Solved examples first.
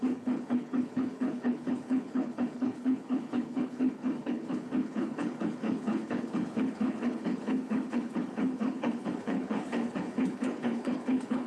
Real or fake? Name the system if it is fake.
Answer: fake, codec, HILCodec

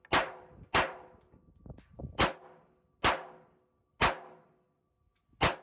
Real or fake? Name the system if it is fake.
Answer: real